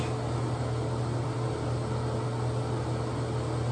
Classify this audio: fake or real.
real